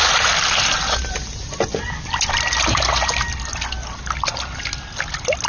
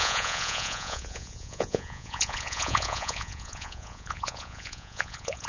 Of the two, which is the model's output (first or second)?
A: second